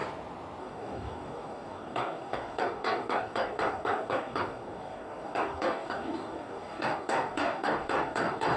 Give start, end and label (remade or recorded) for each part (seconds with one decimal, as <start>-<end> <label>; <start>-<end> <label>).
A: 0.0-0.6 recorded; 0.6-8.6 remade